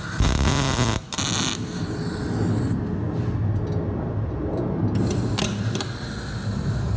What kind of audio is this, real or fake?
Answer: real